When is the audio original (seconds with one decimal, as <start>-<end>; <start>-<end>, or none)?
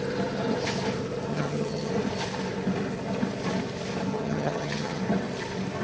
0.0-1.3; 1.9-4.1; 5.0-5.8